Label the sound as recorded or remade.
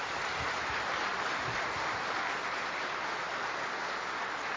recorded